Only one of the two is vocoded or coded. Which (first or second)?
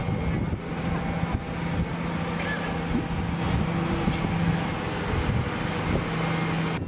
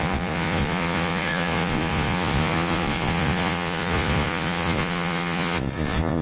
second